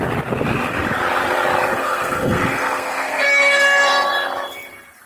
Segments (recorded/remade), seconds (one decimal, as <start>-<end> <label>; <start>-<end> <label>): 0.0-1.7 recorded; 1.7-4.1 remade; 4.1-5.1 recorded